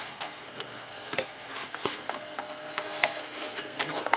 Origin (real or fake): fake